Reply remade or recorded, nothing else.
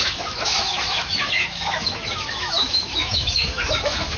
remade